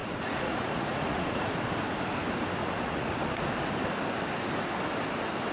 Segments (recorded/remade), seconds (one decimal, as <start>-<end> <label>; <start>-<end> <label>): 0.0-1.5 remade; 1.5-2.6 recorded; 2.6-3.3 remade; 3.3-5.5 recorded